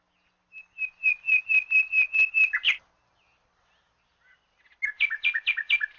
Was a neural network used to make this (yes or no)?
no